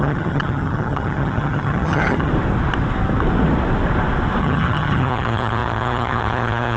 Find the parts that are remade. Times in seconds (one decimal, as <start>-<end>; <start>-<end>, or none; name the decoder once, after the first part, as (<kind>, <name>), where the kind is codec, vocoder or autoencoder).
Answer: 0.0-2.3 (vocoder, HiFi-GAN); 4.4-6.8